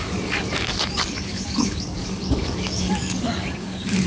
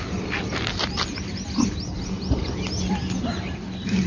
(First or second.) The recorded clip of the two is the second